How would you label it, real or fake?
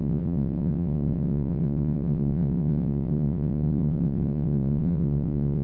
fake